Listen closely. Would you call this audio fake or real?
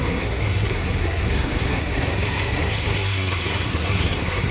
fake